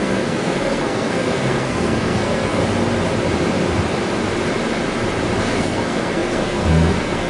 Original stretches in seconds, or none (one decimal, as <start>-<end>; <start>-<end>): 2.6-5.4